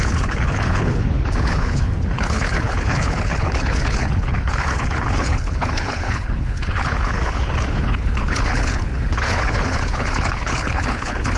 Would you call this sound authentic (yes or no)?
no